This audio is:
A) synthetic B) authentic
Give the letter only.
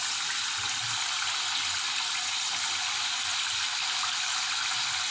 B